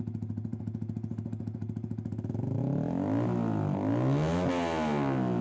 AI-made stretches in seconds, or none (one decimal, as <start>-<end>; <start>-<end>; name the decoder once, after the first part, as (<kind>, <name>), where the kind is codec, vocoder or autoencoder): none